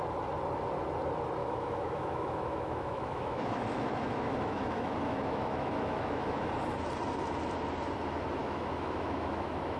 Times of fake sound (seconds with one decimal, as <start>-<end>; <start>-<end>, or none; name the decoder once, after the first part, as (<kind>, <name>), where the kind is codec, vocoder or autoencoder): 1.4-6.5 (autoencoder, DAC-VAE); 8.4-9.8